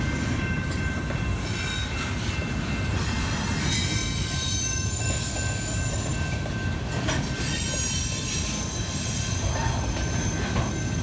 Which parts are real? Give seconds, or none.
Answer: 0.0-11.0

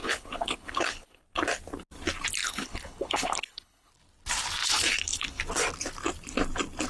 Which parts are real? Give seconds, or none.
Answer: 1.2-2.4; 3.9-4.6; 5.4-6.9